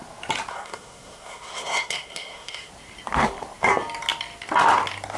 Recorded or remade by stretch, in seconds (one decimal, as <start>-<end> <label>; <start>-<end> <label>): 0.0-0.5 recorded; 0.5-2.7 remade; 2.7-5.2 recorded

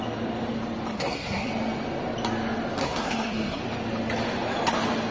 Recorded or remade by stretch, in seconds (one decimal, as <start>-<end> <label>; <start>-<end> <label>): 0.0-0.9 recorded; 0.9-1.5 remade; 1.5-2.8 recorded; 2.8-3.6 remade; 3.6-5.1 recorded

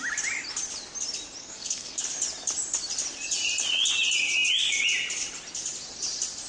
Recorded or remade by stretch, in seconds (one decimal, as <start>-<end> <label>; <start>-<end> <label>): 0.0-1.4 recorded; 1.4-2.0 remade; 2.0-6.5 recorded

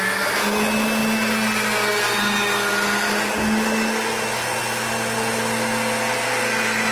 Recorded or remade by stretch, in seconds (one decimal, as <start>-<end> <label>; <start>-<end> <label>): 0.0-6.9 recorded